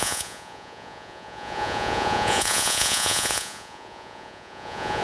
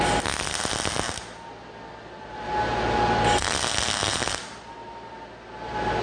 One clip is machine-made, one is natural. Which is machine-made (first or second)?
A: first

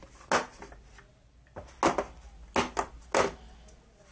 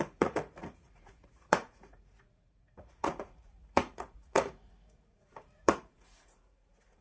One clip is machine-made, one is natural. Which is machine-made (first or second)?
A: second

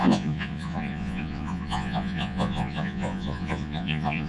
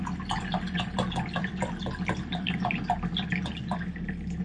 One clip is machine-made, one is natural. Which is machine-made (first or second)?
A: first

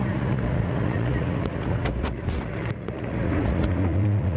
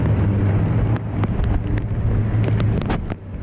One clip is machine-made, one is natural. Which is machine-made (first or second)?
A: first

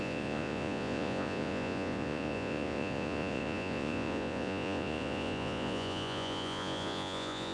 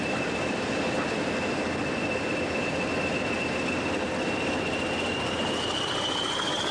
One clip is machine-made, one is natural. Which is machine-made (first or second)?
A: first